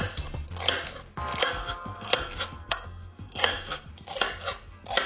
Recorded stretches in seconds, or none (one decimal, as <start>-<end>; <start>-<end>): 0.0-1.4; 3.9-5.1